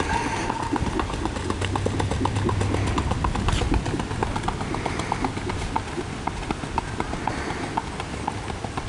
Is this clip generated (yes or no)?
no